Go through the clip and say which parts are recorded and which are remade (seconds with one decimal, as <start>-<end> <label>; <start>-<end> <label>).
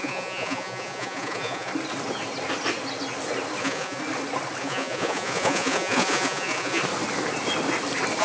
0.0-1.7 remade; 1.7-3.6 recorded; 3.6-4.0 remade; 4.0-4.6 recorded; 4.6-6.8 remade; 6.8-8.2 recorded